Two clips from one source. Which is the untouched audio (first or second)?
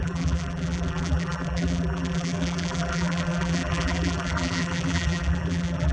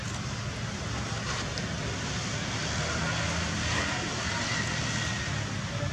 second